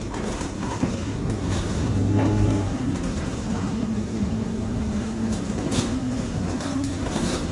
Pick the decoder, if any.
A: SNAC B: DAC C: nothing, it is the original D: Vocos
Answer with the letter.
A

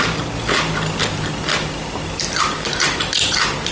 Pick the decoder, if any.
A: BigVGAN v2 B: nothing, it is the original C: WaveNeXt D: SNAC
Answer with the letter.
B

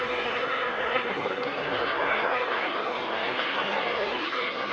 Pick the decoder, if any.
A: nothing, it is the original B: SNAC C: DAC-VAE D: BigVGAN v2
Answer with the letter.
B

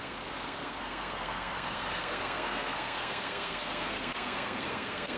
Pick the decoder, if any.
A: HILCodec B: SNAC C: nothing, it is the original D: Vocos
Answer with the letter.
B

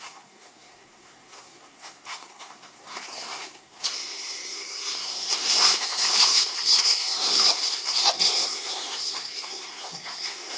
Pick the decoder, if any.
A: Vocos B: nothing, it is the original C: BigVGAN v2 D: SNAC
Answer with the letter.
D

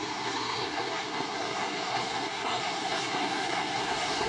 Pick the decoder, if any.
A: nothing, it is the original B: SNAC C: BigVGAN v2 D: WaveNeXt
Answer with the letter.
B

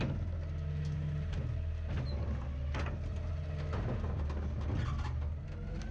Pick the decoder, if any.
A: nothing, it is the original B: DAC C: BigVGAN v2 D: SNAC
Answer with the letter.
A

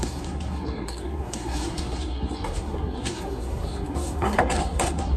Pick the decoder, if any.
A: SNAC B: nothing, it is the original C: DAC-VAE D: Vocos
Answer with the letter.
A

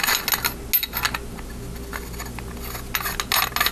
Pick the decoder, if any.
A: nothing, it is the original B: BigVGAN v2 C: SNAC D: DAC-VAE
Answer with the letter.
A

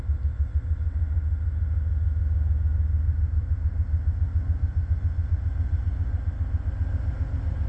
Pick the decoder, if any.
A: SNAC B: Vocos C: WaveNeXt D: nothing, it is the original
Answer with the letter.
D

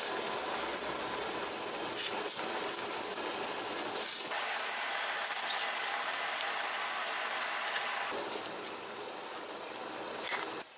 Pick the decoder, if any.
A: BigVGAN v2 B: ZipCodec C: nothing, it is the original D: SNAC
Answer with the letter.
C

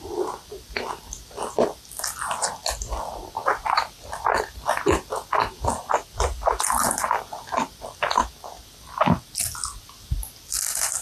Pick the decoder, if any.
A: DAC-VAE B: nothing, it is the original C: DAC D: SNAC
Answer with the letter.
B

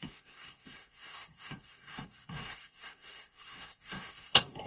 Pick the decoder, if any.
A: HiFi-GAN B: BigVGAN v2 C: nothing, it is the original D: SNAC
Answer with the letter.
D